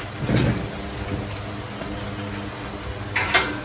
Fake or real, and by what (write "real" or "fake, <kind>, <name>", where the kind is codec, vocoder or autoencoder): real